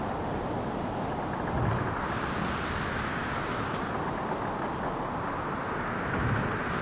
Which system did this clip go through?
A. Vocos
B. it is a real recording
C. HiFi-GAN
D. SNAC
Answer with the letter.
B